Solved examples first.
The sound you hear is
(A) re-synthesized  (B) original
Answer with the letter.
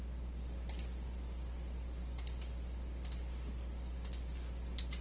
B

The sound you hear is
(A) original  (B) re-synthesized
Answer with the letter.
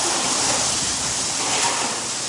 A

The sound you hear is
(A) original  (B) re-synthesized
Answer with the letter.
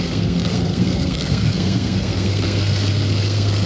B